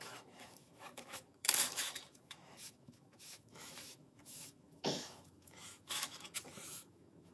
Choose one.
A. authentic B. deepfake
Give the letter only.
B